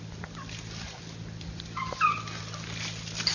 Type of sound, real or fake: real